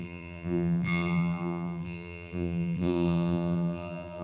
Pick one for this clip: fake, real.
fake